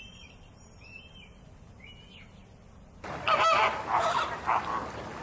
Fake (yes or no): no